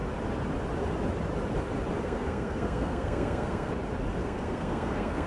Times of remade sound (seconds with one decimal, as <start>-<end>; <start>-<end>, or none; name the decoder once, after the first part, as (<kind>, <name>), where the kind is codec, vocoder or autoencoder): 2.0-3.7 (codec, SNAC); 4.2-5.3